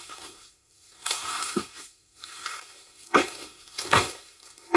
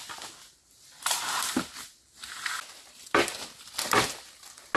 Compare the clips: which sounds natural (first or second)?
second